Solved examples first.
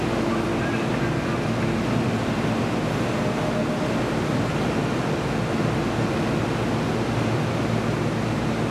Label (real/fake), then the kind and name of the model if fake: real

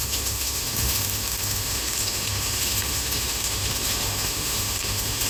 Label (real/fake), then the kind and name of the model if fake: fake, autoencoder, DAC-VAE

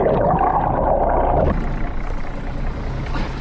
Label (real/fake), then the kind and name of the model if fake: real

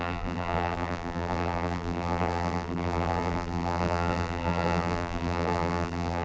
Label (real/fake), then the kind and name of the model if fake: fake, vocoder, BigVGAN v2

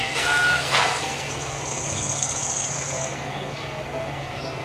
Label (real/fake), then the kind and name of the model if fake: fake, codec, SNAC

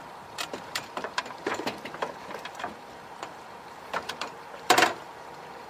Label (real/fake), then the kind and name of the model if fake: fake, vocoder, BigVGAN v2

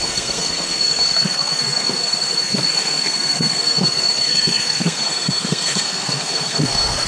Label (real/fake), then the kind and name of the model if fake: fake, codec, SNAC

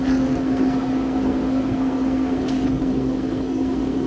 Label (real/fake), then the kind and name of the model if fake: fake, codec, SNAC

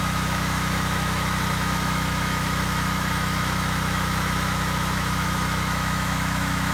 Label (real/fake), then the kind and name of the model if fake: fake, autoencoder, DAC-VAE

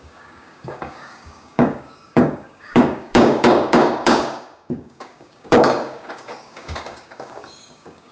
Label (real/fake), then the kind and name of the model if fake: fake, codec, DAC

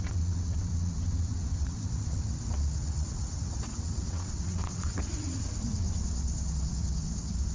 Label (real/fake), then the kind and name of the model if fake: fake, vocoder, WaveNeXt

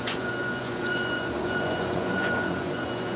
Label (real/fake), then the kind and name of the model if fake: fake, vocoder, Vocos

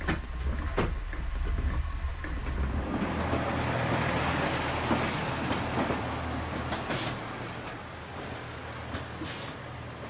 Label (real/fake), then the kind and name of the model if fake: real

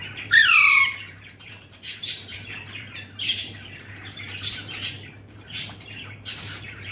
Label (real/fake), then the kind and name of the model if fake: fake, vocoder, BigVGAN v2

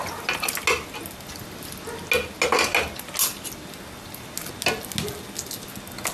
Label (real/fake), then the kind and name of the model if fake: real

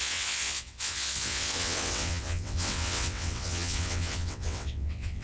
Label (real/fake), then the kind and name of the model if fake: fake, vocoder, WaveNeXt